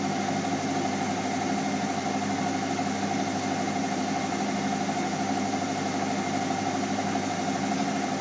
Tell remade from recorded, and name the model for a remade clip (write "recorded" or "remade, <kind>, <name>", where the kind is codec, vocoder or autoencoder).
recorded